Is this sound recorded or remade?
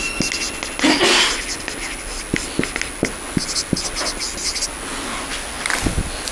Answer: recorded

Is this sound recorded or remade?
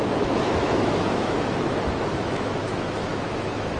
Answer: remade